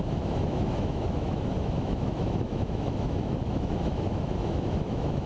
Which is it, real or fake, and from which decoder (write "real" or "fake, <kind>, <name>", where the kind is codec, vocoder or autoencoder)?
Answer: fake, autoencoder, DAC-VAE